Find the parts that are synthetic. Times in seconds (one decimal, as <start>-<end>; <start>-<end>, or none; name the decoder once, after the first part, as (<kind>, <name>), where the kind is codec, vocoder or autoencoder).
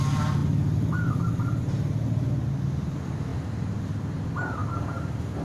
none